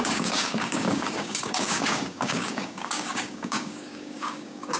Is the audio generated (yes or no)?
yes